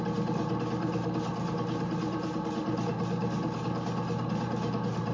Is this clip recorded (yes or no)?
yes